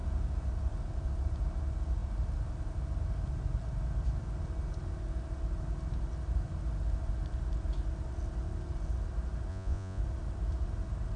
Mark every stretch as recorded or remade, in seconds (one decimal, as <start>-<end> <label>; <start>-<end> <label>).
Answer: 0.0-9.5 recorded; 9.5-10.0 remade; 10.0-11.2 recorded